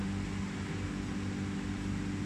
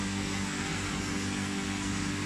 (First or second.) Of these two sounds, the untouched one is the first